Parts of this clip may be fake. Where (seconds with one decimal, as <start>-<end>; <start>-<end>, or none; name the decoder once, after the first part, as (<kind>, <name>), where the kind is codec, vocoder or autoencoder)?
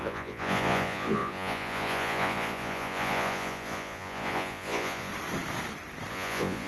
0.0-5.1 (vocoder, Vocos); 6.1-6.7